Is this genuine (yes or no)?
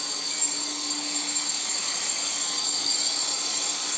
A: no